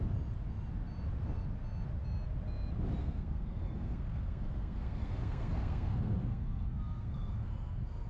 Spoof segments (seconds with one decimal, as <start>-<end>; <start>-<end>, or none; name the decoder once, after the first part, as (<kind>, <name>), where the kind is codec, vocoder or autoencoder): 3.0-8.1 (codec, SNAC)